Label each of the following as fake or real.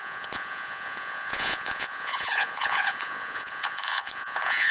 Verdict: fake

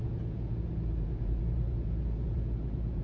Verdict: fake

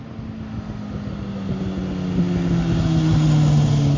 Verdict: real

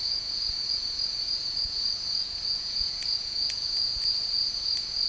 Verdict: fake